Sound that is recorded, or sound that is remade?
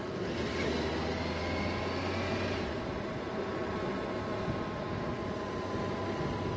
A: recorded